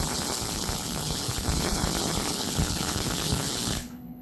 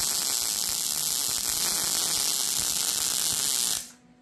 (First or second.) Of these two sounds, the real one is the second